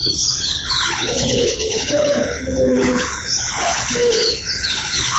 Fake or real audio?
fake